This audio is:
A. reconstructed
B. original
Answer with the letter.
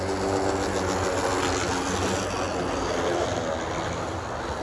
B